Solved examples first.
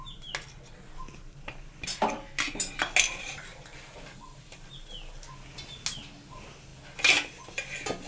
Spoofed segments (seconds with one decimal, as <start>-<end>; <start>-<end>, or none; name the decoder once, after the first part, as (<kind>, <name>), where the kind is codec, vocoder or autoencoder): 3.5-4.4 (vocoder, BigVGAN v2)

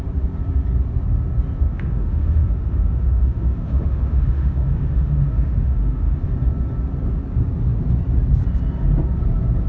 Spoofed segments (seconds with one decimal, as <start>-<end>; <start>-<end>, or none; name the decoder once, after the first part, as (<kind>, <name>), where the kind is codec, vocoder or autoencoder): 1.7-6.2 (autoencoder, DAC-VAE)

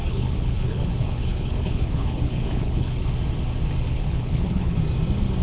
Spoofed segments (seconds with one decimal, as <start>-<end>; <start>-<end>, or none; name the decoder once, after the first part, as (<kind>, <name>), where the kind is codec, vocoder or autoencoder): 0.0-3.1 (codec, HILCodec); 3.9-4.8

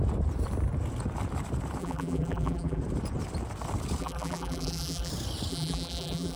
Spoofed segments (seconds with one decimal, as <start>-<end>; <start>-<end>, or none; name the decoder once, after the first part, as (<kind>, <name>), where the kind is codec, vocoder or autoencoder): 1.8-2.8 (vocoder, BigVGAN v2); 4.0-5.1; 5.5-6.4

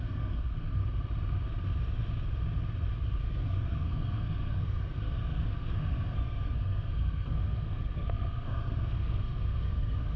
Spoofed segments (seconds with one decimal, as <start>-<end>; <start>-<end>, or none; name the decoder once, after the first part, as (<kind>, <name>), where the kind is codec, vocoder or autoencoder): 0.0-0.8 (codec, SNAC); 3.2-10.2